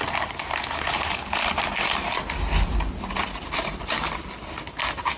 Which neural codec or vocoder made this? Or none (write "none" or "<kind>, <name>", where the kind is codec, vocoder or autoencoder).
none